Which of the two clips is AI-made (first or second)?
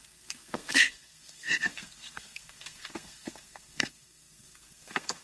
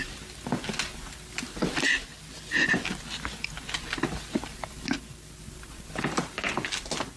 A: first